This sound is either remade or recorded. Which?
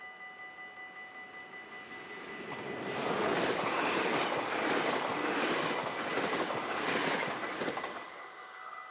recorded